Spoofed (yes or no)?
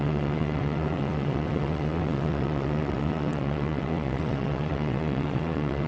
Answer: yes